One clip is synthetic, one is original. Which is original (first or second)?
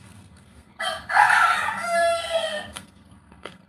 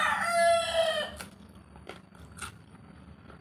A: second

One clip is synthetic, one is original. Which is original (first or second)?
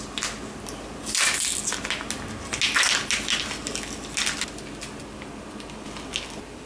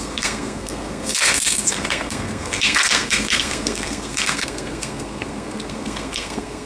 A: first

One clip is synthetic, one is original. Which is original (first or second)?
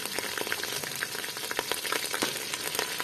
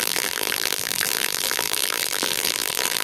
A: first